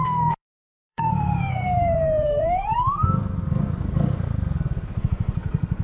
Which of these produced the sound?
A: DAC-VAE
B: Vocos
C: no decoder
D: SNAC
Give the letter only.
D